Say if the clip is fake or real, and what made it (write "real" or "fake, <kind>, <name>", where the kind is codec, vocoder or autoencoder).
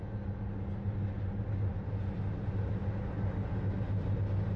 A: real